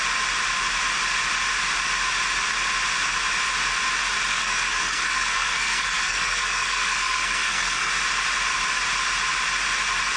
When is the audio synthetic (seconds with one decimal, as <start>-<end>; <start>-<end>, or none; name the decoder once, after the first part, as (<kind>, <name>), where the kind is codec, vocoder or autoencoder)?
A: 4.3-7.9 (codec, SNAC)